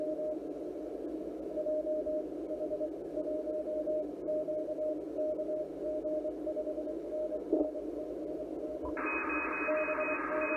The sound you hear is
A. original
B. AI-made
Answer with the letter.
A